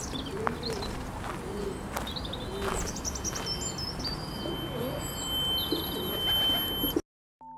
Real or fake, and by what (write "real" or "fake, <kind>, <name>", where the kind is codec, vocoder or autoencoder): real